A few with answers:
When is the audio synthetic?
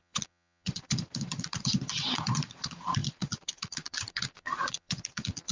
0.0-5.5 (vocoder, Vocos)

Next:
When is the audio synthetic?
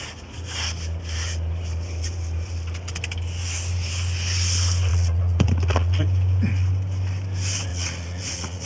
4.9-6.0 (vocoder, Vocos); 7.7-8.7